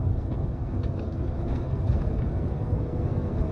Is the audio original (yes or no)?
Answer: no